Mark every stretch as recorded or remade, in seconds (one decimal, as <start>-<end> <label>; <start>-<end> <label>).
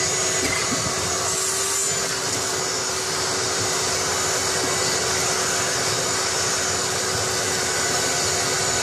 0.0-8.8 recorded